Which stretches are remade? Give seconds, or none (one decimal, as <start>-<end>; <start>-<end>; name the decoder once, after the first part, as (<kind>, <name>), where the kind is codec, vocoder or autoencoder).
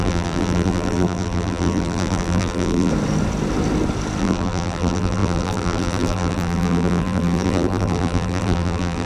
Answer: 0.0-2.9 (vocoder, BigVGAN v2); 4.2-9.1